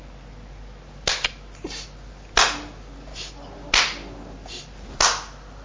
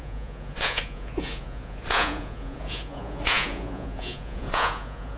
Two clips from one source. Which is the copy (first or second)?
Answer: second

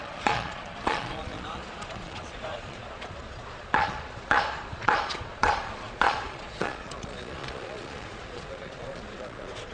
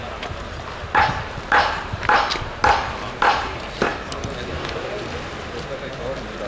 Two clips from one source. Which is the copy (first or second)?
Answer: first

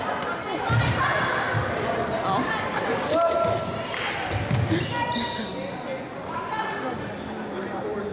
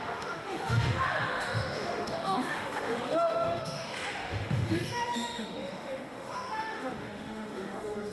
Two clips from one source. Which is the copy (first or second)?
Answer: second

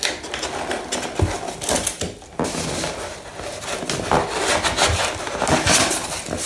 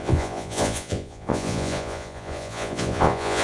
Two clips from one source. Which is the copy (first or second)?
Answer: second